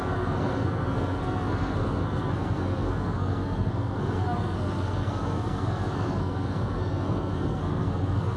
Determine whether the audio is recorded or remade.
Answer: remade